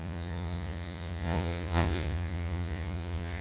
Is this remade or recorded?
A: remade